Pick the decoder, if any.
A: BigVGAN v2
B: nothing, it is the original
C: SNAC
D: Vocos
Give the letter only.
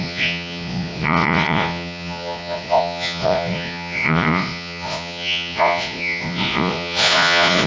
D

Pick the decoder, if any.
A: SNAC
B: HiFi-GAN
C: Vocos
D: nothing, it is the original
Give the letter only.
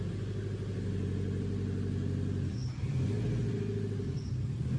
D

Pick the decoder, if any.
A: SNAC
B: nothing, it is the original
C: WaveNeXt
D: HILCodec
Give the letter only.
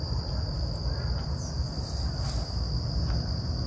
B